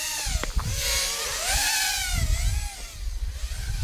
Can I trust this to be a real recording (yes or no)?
yes